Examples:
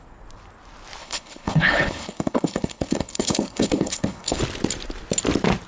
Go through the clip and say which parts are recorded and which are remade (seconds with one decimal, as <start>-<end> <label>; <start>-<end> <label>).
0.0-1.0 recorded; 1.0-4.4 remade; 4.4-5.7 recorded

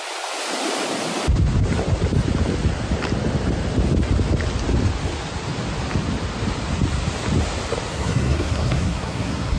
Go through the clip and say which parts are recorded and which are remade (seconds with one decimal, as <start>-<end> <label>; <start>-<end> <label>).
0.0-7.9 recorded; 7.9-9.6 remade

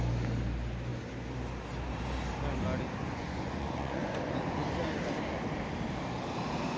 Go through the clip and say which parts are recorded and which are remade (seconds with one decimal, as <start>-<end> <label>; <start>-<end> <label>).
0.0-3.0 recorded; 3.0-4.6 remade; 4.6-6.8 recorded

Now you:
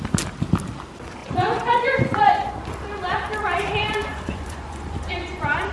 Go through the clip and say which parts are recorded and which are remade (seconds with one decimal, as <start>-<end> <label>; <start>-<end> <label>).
0.0-1.2 recorded; 1.2-2.5 remade; 2.5-4.1 recorded; 4.1-5.7 remade

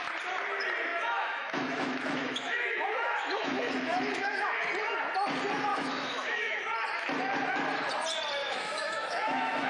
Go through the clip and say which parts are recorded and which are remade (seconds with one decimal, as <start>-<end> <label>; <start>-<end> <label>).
0.0-0.9 recorded; 0.9-4.7 remade; 4.7-5.7 recorded; 5.7-6.6 remade; 6.6-8.4 recorded; 8.4-9.7 remade

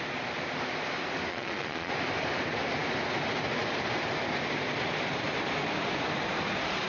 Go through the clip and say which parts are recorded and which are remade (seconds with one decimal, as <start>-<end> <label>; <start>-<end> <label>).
0.0-1.3 recorded; 1.3-1.9 remade; 1.9-6.9 recorded